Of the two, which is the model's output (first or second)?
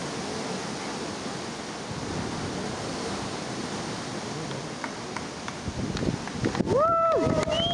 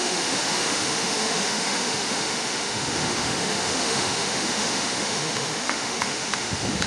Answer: second